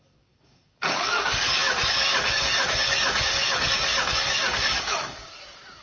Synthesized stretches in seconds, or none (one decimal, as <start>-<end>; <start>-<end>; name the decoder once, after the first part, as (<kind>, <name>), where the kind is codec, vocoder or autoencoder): 0.0-5.8 (codec, DAC)